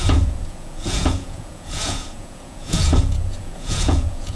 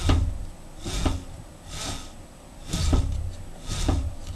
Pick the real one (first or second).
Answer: second